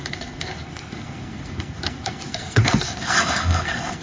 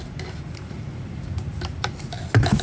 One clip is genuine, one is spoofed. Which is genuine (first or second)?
second